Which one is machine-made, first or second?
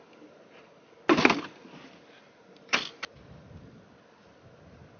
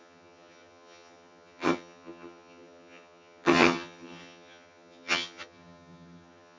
second